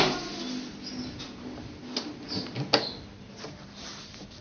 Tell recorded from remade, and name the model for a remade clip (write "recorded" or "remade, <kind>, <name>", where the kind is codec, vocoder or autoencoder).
recorded